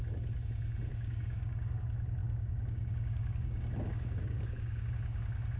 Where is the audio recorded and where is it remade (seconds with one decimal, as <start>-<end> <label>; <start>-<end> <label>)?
0.0-0.9 recorded; 0.9-1.8 remade; 1.8-2.2 recorded; 2.2-4.9 remade; 4.9-5.6 recorded